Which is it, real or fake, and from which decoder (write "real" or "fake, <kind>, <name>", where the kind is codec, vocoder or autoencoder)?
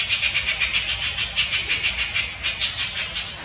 real